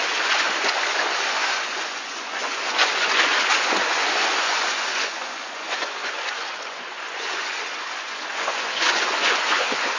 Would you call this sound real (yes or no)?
no